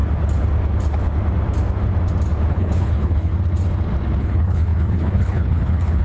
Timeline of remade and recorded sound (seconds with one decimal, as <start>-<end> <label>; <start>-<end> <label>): 0.0-2.5 recorded; 2.5-3.3 remade; 3.3-4.2 recorded; 4.2-6.0 remade